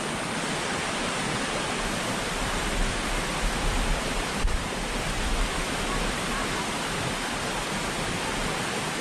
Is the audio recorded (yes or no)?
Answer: no